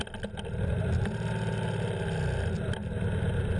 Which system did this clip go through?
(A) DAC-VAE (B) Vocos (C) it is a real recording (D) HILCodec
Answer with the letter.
C